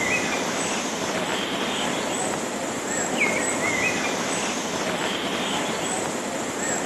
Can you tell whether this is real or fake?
real